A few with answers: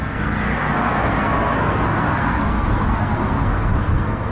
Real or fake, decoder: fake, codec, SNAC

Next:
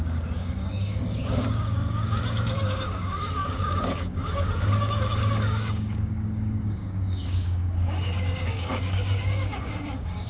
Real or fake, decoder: fake, codec, DAC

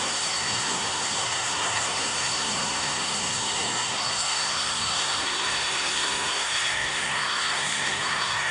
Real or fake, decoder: fake, codec, SNAC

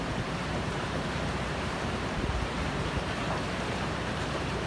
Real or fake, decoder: fake, vocoder, BigVGAN v2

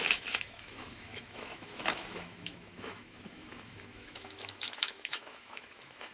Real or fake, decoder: fake, autoencoder, DAC-VAE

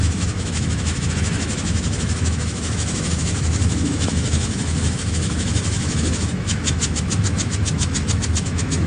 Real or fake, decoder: fake, autoencoder, DAC-VAE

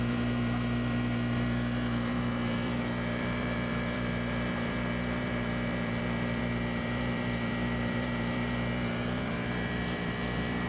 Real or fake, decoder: fake, vocoder, BigVGAN v2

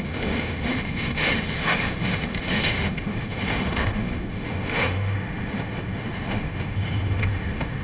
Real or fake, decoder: fake, autoencoder, DAC-VAE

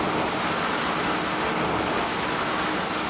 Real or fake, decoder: real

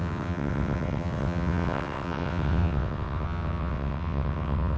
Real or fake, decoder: fake, vocoder, WaveNeXt